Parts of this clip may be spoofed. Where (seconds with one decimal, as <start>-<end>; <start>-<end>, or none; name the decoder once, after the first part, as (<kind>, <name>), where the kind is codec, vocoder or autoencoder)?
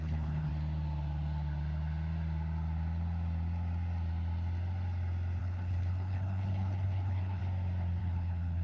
0.0-0.5 (codec, HILCodec); 5.4-7.4; 8.0-8.6